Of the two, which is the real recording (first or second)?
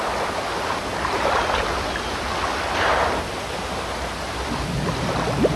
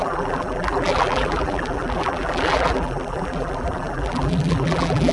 first